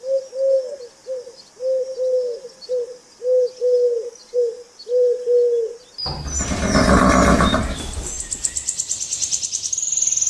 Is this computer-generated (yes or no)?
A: no